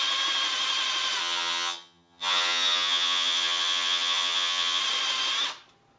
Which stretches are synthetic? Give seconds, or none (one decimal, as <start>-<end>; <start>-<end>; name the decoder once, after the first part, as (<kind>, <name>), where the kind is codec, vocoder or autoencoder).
1.2-4.8 (vocoder, HiFi-GAN)